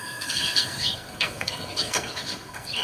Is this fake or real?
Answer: fake